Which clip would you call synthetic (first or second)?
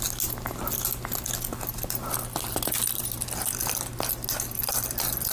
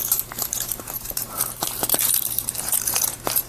second